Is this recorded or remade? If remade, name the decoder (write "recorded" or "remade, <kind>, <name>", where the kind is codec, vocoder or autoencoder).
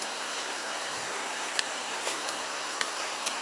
remade, codec, SNAC